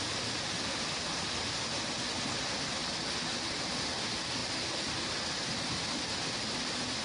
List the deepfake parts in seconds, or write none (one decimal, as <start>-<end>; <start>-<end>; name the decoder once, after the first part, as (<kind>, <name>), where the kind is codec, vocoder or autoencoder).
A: none